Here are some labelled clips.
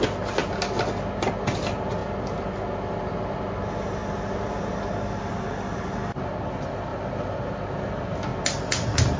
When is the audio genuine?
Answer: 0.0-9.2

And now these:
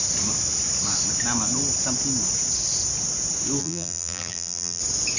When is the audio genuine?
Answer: 0.0-3.6; 4.8-5.2

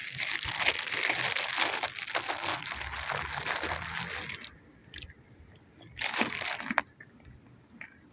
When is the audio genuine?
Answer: 0.0-8.1

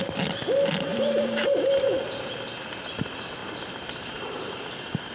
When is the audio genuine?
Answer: 0.0-0.9; 2.6-3.4; 4.5-5.1

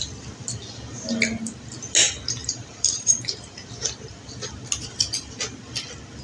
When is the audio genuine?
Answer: 0.0-2.4; 4.5-6.2

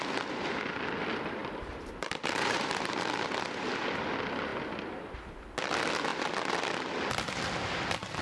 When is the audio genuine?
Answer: 0.0-1.4; 3.4-8.2

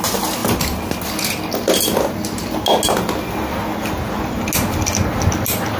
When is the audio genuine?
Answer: 0.0-5.8

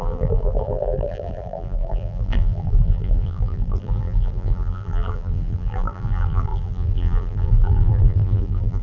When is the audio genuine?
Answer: none